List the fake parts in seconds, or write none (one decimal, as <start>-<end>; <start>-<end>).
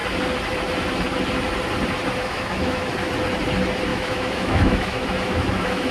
2.2-2.9; 3.9-5.9